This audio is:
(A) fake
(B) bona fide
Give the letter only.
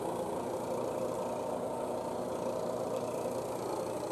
B